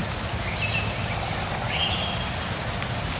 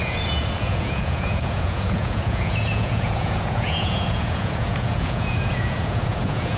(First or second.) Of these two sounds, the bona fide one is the first